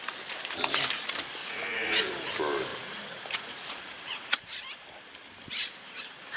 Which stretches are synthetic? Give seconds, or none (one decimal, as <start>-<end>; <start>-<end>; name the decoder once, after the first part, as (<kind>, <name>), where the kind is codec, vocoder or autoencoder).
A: 1.4-2.0 (vocoder, Vocos); 2.7-4.6